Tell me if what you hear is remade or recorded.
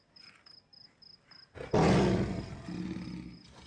recorded